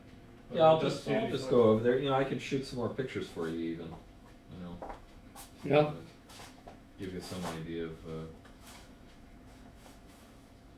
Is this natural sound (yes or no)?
no